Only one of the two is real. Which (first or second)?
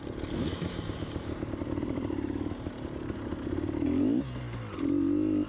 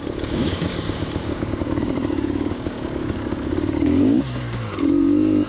first